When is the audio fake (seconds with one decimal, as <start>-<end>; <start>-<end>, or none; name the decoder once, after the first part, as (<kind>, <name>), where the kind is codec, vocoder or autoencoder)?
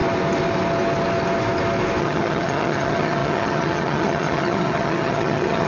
2.0-5.7 (vocoder, HiFi-GAN)